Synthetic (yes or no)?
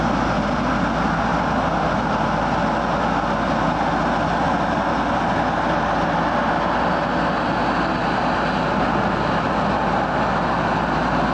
no